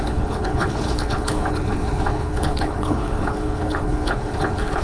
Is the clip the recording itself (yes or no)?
no